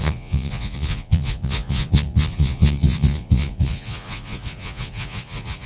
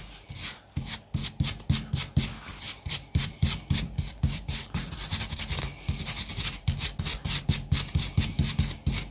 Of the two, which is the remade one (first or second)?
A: first